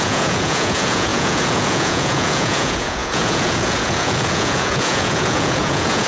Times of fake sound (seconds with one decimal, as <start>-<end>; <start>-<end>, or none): 0.0-6.1